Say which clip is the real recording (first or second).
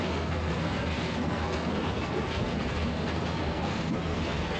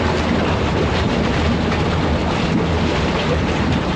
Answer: second